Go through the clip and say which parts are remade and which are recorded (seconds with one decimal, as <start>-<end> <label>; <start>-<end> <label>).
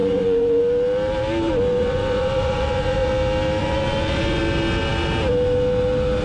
0.0-0.6 remade; 0.6-1.8 recorded; 1.8-3.1 remade; 3.1-3.6 recorded; 3.6-4.4 remade; 4.4-6.2 recorded